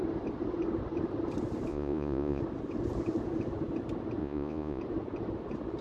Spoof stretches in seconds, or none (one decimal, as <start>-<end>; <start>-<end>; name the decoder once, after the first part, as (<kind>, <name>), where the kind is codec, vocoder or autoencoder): 1.7-2.4 (vocoder, Vocos); 4.2-4.8